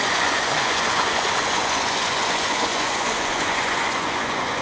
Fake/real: fake